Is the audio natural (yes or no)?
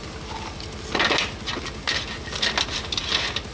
yes